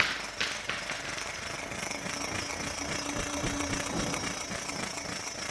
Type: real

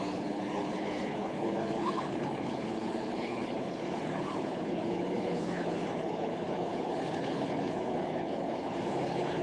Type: fake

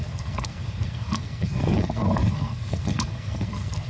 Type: fake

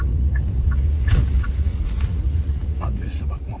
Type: fake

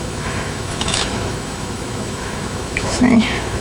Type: fake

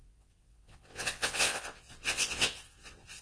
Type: fake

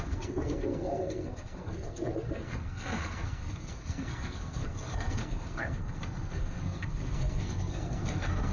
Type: fake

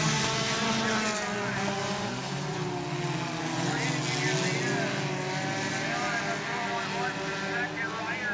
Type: real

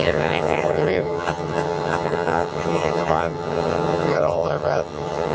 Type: fake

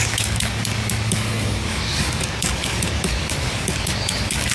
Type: fake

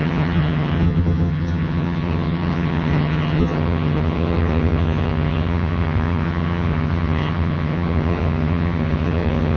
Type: fake